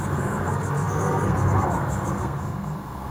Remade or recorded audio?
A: remade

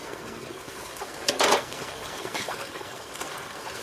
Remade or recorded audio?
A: remade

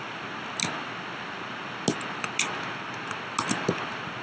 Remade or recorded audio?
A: recorded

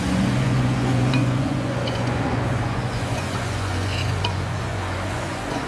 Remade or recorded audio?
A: remade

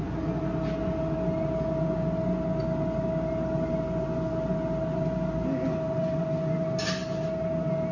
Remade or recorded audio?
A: recorded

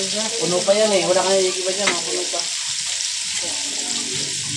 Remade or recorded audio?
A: recorded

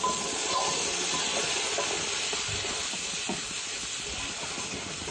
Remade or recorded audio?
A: recorded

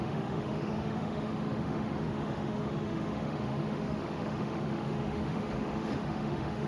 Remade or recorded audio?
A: remade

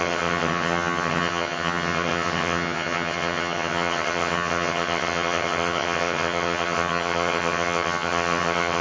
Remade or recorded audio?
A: remade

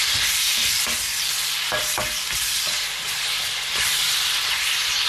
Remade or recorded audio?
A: remade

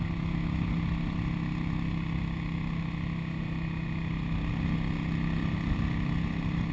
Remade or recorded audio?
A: recorded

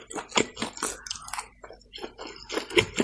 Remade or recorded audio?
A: recorded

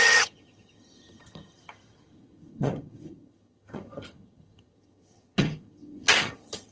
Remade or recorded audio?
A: remade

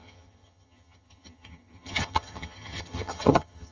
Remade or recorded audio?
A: remade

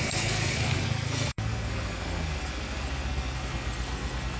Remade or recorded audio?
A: remade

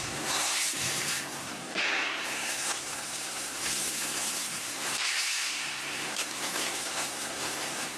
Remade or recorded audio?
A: remade